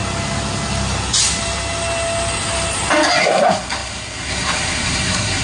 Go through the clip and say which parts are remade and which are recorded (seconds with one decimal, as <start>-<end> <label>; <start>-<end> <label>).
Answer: 0.0-3.2 recorded; 3.2-5.4 remade